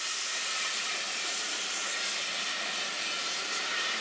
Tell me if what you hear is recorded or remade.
remade